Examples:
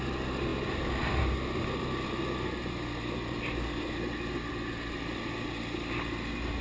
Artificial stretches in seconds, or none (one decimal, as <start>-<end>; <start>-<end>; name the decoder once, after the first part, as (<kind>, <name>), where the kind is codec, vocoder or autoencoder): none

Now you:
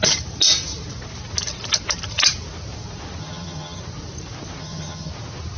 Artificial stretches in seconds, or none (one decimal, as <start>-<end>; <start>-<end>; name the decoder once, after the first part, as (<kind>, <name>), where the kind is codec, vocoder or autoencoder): 3.2-3.8 (vocoder, HiFi-GAN); 4.6-5.1

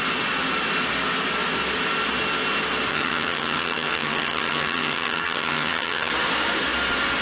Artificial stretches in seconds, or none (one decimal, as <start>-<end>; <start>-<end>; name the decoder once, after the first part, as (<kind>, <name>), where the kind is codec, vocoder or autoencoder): 2.9-6.1 (vocoder, HiFi-GAN)

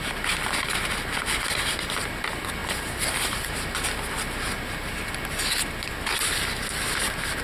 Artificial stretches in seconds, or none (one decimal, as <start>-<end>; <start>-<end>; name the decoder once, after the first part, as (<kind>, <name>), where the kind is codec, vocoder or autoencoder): none

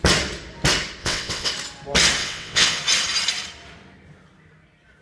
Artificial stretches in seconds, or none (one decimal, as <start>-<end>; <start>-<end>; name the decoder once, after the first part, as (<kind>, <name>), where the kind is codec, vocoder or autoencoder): 1.0-1.5 (vocoder, WaveNeXt); 2.2-2.8